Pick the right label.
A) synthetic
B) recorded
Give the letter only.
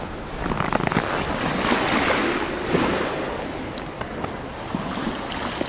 B